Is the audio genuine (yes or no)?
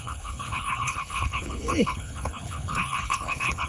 no